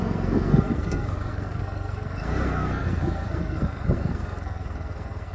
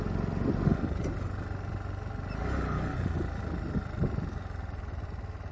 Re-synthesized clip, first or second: first